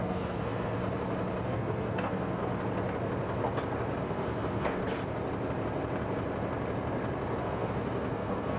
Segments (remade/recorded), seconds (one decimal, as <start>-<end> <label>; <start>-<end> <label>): 0.0-0.8 remade; 0.8-1.5 recorded; 1.5-2.4 remade; 2.4-4.0 recorded; 4.0-4.8 remade; 4.8-7.4 recorded; 7.4-8.6 remade